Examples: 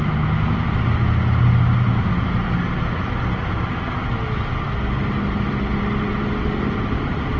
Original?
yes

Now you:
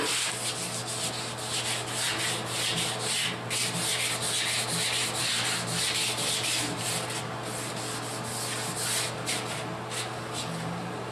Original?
yes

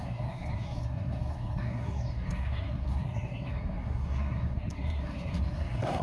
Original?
no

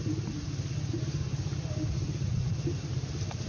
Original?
yes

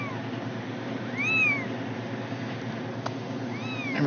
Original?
yes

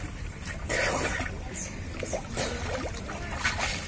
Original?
yes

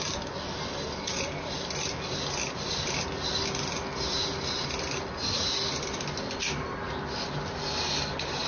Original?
yes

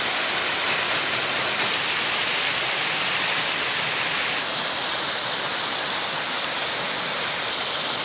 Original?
yes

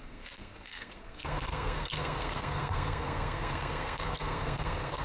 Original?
no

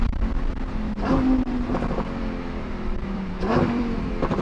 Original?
no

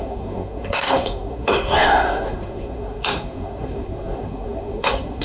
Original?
no